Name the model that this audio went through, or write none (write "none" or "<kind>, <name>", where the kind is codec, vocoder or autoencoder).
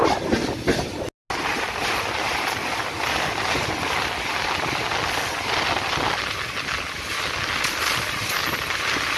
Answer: none